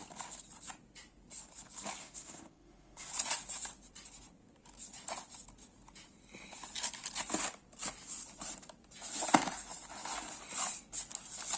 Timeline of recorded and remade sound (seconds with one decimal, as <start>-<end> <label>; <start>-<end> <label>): 0.0-2.0 recorded; 2.0-3.1 remade; 3.1-11.6 recorded